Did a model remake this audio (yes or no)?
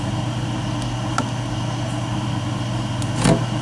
no